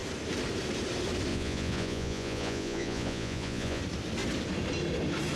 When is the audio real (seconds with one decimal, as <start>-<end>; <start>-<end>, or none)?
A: 0.0-1.3; 3.8-5.4